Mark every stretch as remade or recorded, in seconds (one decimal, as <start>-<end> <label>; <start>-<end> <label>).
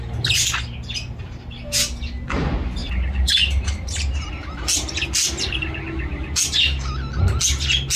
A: 0.0-2.8 recorded; 2.8-4.3 remade; 4.3-8.0 recorded